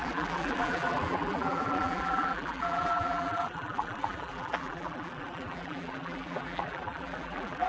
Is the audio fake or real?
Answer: fake